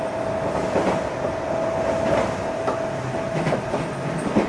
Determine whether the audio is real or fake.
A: real